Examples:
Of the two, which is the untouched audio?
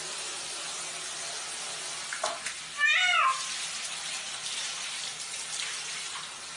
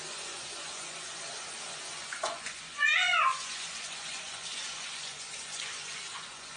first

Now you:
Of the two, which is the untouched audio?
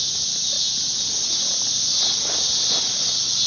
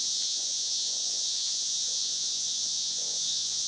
first